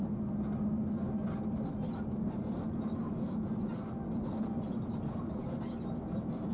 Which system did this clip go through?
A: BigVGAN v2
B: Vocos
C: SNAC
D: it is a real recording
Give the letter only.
D